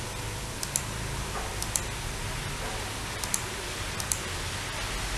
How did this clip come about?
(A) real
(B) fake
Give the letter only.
A